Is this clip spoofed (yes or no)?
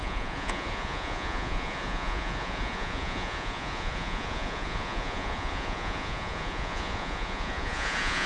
yes